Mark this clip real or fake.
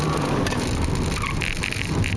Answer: real